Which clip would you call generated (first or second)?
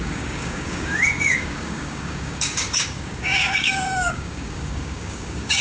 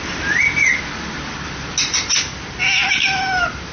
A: first